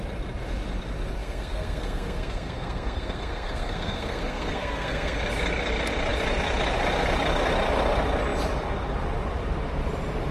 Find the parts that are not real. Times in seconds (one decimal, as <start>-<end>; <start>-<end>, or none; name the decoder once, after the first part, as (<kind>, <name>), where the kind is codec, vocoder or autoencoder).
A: 1.2-5.2 (codec, SNAC)